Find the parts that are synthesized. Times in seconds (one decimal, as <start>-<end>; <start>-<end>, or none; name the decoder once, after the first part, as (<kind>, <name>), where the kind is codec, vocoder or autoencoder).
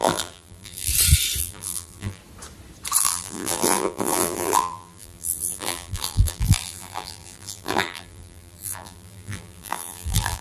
0.0-0.9 (vocoder, BigVGAN v2); 1.4-2.2; 3.0-10.4